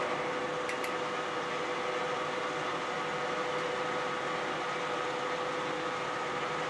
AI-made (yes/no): no